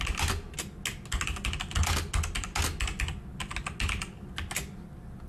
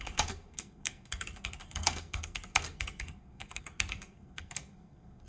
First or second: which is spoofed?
second